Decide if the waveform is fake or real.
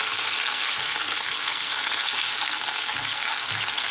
fake